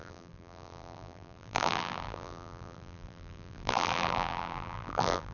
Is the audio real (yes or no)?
no